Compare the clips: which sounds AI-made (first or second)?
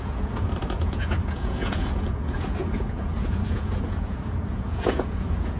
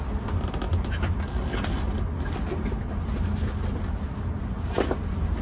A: first